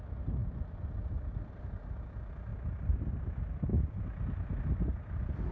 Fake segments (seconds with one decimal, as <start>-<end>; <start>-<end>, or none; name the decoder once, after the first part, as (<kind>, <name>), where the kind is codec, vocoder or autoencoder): none